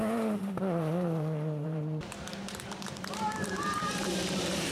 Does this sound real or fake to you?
fake